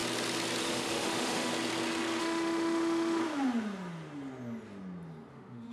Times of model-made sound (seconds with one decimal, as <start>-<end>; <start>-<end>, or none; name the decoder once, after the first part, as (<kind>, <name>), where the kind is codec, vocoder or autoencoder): 0.6-1.5 (autoencoder, DAC-VAE); 2.2-3.2; 5.3-5.7